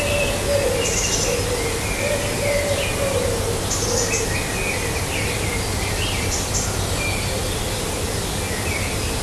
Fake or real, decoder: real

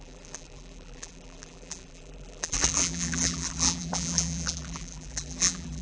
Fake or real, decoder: fake, vocoder, BigVGAN v2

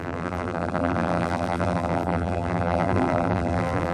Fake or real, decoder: fake, vocoder, BigVGAN v2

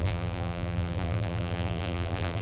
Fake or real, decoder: fake, vocoder, BigVGAN v2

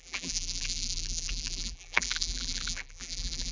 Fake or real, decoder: fake, vocoder, BigVGAN v2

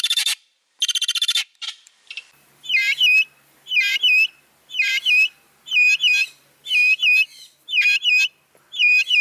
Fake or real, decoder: fake, vocoder, BigVGAN v2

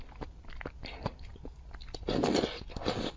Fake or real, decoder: real